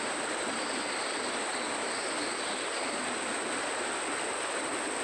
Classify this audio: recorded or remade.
recorded